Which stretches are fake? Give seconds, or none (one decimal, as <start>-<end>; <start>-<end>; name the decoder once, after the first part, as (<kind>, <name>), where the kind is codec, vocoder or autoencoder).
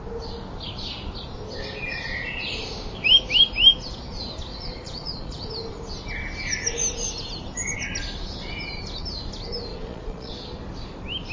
4.5-5.5 (vocoder, Vocos); 9.7-10.3